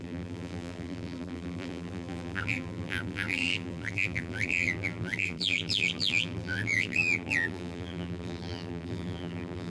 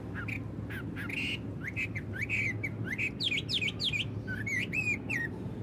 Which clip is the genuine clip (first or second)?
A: second